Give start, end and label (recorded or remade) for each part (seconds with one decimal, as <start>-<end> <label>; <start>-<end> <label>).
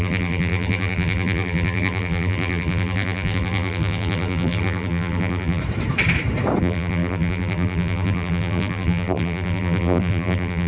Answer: 0.0-5.6 remade; 5.6-6.6 recorded; 6.6-10.7 remade